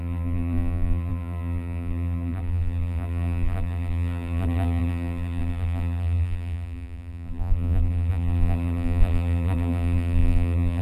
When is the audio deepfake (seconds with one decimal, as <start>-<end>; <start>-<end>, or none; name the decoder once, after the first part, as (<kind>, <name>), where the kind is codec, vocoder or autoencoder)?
0.0-10.8 (vocoder, BigVGAN v2)